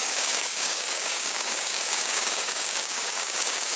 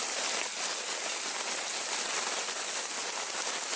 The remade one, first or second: first